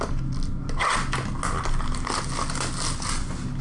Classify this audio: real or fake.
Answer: real